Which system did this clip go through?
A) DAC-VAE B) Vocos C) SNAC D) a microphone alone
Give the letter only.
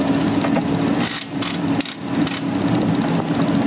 D